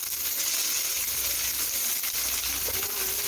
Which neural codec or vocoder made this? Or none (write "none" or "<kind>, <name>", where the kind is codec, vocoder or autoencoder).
none